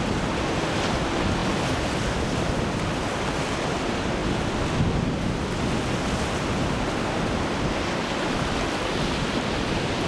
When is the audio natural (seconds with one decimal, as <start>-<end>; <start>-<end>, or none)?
0.0-10.1

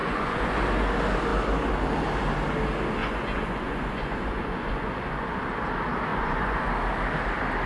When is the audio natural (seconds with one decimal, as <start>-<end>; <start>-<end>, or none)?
0.6-3.0; 5.4-6.1; 6.7-7.7

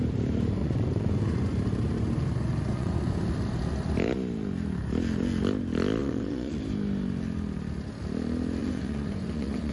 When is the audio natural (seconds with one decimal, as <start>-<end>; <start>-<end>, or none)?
0.0-0.6; 1.5-2.7; 3.2-6.0; 6.6-8.6

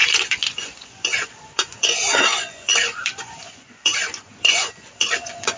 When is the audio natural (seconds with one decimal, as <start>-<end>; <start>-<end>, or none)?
none

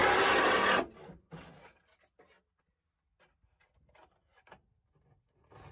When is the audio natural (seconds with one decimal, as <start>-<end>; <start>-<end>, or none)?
0.0-5.7

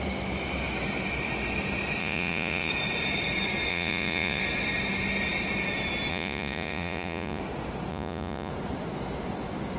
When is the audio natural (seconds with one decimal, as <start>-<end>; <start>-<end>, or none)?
0.0-2.0; 2.7-3.7; 4.4-6.1; 7.4-7.9; 8.5-9.8